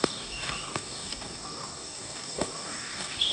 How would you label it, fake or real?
fake